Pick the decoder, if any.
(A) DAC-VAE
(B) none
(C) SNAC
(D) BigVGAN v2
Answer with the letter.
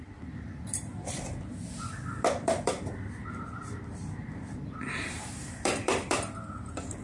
D